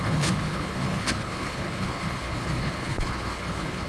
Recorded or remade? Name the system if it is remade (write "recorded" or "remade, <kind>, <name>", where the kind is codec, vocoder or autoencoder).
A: remade, codec, HILCodec